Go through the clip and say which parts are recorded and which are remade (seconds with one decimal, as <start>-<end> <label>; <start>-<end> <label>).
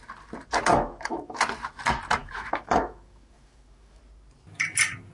0.0-0.7 recorded; 0.7-1.4 remade; 1.4-2.2 recorded; 2.2-4.0 remade; 4.0-5.1 recorded